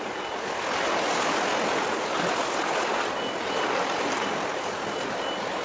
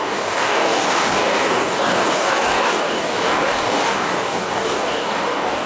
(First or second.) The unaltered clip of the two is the first